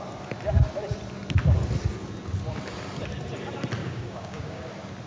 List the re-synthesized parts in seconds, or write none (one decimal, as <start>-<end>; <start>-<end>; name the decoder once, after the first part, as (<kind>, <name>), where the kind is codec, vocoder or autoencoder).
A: 3.8-4.6 (codec, DAC)